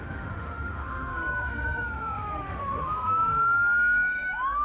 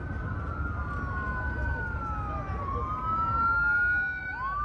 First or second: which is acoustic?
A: second